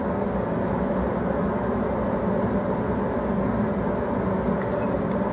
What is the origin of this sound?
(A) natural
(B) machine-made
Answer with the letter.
A